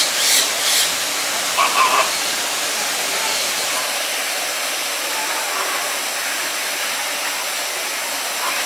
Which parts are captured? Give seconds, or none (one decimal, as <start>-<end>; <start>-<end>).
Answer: 0.0-8.7